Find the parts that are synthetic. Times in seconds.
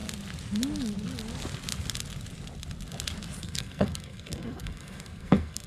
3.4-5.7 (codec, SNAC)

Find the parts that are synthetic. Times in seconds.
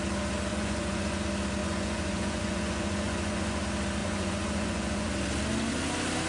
0.5-1.2 (vocoder, Vocos); 1.6-3.6; 4.0-5.1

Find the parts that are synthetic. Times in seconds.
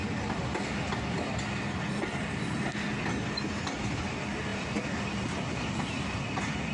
none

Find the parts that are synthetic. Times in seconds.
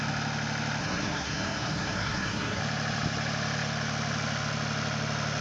0.8-2.6 (codec, SNAC)